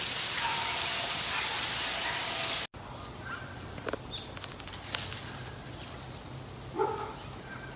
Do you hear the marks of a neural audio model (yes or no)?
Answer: no